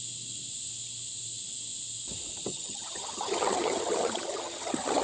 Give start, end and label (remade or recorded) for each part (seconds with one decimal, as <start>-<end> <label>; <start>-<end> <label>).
0.0-2.5 recorded; 2.5-5.0 remade